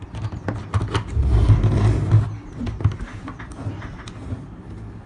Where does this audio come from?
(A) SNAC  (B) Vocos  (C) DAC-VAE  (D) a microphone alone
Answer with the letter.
D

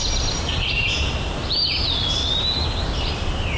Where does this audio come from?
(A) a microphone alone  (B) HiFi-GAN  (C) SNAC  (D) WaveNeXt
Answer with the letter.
A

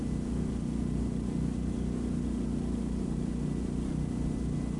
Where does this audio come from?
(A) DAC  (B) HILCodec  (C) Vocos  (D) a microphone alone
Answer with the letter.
D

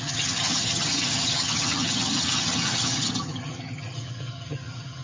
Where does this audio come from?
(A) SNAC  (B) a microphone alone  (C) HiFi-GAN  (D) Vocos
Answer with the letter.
C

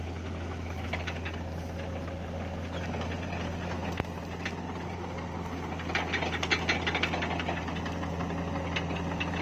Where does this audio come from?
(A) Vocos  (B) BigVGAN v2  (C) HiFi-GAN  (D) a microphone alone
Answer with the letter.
D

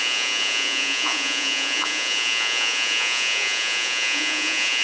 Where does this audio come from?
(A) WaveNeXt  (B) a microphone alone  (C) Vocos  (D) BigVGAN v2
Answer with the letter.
C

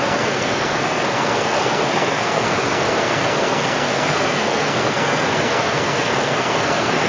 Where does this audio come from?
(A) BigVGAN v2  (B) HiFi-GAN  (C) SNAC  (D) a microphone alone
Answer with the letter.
C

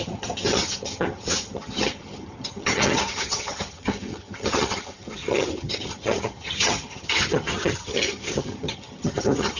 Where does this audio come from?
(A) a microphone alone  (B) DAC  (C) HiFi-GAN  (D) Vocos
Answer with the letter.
C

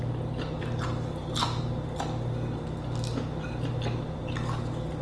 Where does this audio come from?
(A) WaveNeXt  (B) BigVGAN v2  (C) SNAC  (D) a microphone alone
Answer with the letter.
D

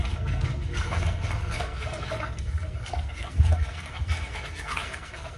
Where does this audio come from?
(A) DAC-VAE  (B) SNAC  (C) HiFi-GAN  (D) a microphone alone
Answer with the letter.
B